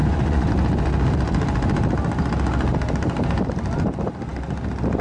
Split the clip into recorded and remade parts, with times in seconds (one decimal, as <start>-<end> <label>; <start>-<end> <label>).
0.0-0.5 remade; 0.5-5.0 recorded